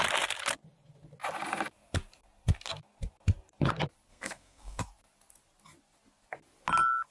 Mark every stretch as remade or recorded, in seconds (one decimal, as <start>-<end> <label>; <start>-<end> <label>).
0.0-4.1 recorded; 4.1-4.8 remade; 4.8-7.1 recorded